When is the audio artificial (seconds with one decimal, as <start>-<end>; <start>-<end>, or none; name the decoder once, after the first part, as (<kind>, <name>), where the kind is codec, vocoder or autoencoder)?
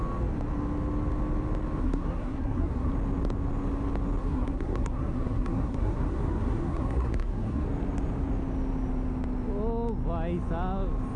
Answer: 1.8-2.9 (codec, SNAC); 4.2-7.7